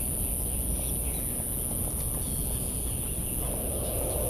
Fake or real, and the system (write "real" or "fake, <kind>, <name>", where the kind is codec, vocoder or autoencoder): real